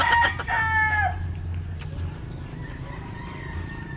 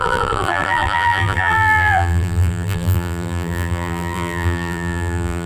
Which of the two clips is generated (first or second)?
second